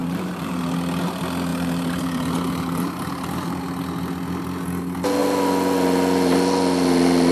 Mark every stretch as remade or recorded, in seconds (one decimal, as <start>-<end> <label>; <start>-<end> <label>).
0.0-0.6 remade; 0.6-1.5 recorded; 1.5-3.6 remade; 3.6-7.3 recorded